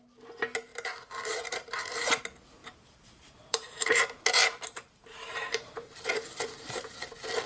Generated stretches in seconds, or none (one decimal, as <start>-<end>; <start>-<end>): 0.7-2.2; 2.6-7.1